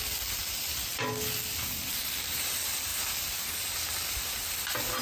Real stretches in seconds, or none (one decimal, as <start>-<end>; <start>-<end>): 0.0-5.0